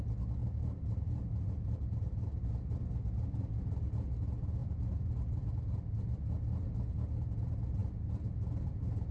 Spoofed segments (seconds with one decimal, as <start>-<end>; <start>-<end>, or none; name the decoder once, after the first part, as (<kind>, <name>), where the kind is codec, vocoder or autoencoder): 0.4-3.5 (vocoder, BigVGAN v2); 4.6-5.8